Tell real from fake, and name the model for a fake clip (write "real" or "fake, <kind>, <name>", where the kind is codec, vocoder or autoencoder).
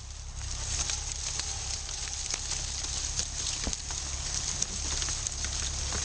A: real